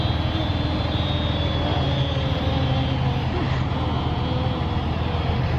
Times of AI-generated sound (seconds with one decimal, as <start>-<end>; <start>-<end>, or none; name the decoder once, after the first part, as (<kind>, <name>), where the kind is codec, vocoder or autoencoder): none

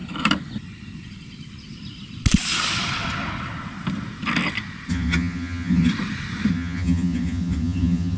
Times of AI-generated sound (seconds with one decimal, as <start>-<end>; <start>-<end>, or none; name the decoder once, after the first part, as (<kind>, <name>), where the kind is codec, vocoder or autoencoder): 4.9-5.9 (vocoder, HiFi-GAN); 6.5-8.2

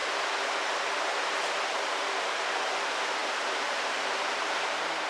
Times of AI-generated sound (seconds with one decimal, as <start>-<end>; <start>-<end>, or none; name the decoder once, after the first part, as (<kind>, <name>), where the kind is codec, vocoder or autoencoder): 1.0-5.1 (vocoder, BigVGAN v2)